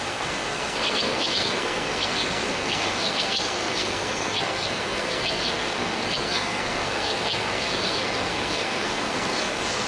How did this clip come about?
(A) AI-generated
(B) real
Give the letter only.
A